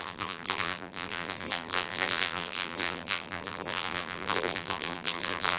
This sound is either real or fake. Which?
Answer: fake